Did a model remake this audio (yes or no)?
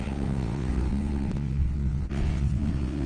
yes